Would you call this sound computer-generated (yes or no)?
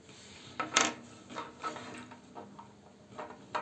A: no